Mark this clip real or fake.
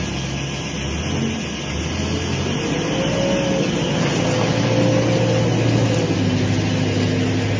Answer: real